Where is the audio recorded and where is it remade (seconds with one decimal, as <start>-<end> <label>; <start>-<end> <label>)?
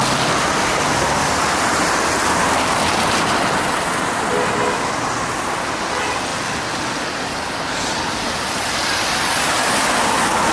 0.0-1.2 recorded; 1.2-1.9 remade; 1.9-10.5 recorded